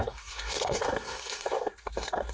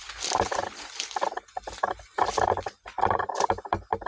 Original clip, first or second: second